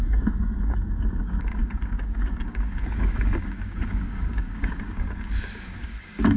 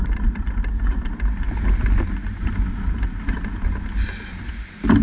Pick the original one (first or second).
second